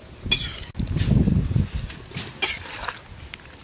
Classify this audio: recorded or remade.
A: recorded